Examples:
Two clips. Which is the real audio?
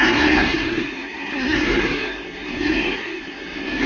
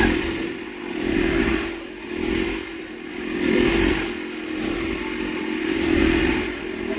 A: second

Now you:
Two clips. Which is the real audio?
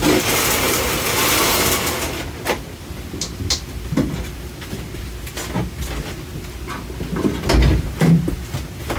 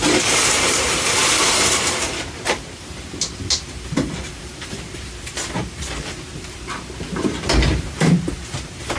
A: first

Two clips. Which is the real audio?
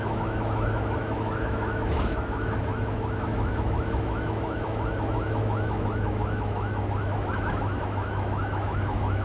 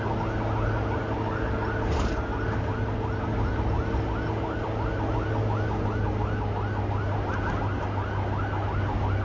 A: second